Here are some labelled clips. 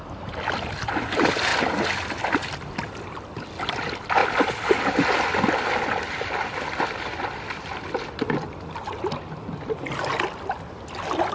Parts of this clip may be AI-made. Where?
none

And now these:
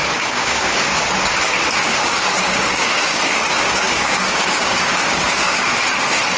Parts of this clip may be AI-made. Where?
0.0-0.9 (codec, DAC); 1.9-5.7

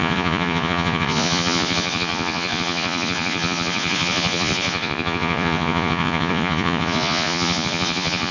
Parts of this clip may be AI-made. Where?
0.0-8.3 (vocoder, Vocos)

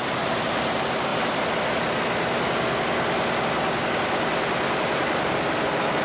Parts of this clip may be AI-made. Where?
none

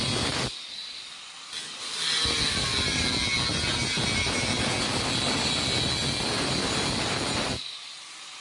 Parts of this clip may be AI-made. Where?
none

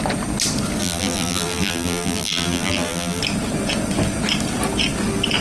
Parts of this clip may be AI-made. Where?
0.8-3.2 (vocoder, BigVGAN v2)

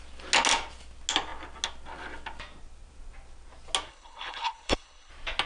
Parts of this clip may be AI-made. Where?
3.9-5.1 (codec, HILCodec)

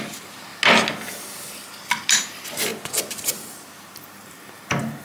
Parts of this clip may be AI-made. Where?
0.0-0.5 (vocoder, BigVGAN v2); 2.1-2.7; 3.7-5.0